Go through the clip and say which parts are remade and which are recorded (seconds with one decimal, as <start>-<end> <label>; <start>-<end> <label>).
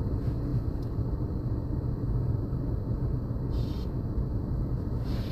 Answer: 0.0-5.3 recorded